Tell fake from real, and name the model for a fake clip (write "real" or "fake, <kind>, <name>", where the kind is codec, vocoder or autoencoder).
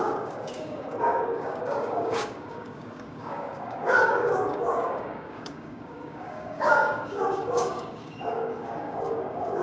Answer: fake, codec, DAC